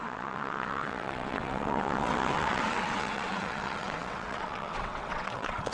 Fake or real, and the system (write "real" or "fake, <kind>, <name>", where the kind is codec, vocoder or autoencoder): fake, vocoder, WaveNeXt